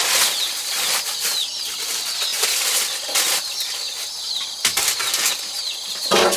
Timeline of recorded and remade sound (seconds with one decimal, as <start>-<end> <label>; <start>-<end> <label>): 0.0-2.3 recorded; 2.3-4.1 remade; 4.1-4.7 recorded; 4.7-5.3 remade; 5.3-6.4 recorded